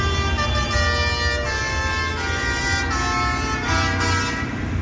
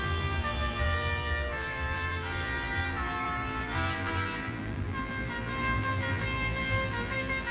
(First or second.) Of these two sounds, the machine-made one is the second